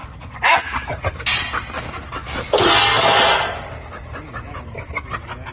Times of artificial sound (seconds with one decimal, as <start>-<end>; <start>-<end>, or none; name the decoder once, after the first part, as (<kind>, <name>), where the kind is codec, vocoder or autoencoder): 0.0-0.6 (vocoder, BigVGAN v2)